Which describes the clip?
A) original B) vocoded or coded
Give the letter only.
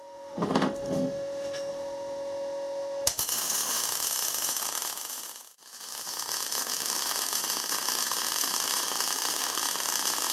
B